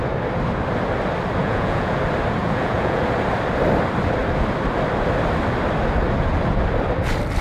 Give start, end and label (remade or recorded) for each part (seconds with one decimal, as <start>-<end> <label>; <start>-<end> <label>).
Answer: 0.0-1.4 recorded; 1.4-2.0 remade; 2.0-2.4 recorded; 2.4-3.0 remade; 3.0-7.4 recorded